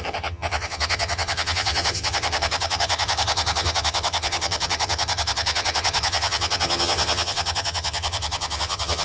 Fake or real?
fake